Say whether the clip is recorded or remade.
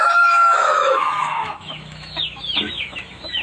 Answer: remade